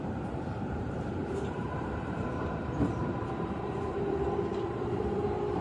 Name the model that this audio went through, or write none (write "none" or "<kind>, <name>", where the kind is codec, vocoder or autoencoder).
vocoder, BigVGAN v2